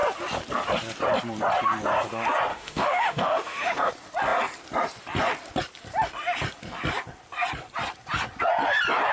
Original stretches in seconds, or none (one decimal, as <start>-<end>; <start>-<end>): 0.0-2.5; 3.9-9.1